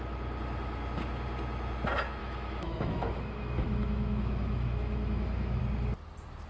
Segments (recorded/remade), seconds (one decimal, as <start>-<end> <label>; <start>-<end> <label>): 0.0-2.2 recorded; 2.2-5.6 remade; 5.6-6.5 recorded